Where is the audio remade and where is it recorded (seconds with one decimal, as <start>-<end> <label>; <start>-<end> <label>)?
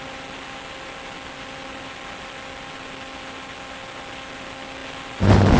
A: 0.0-5.6 recorded